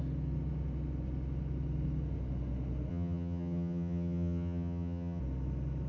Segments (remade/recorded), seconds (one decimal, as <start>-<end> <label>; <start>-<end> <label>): 0.0-2.9 recorded; 2.9-5.2 remade; 5.2-5.9 recorded